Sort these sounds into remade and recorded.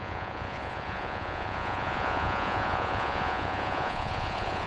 remade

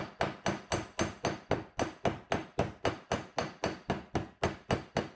recorded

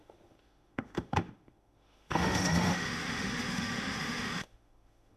remade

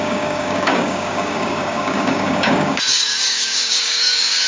remade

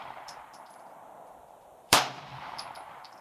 remade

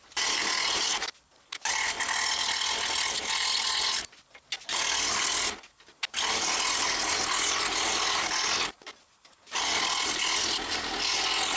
recorded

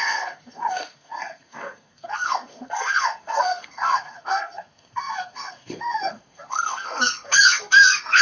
remade